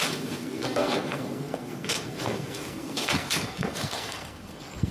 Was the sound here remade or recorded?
remade